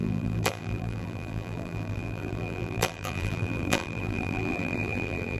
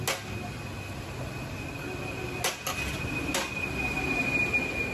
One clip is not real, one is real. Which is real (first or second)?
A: second